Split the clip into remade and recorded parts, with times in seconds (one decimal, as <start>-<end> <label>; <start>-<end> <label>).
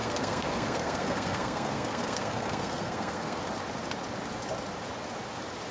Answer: 0.0-3.4 remade; 3.4-5.7 recorded